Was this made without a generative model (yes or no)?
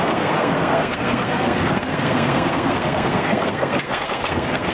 no